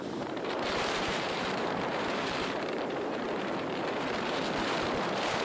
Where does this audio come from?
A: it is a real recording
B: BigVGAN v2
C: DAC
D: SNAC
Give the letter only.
B